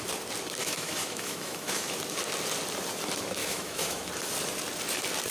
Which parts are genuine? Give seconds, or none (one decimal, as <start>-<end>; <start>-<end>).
0.0-0.6; 2.0-3.4; 4.1-5.3